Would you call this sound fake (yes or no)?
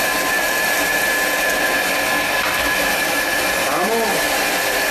no